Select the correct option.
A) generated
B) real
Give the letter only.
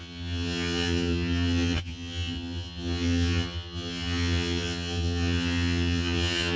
A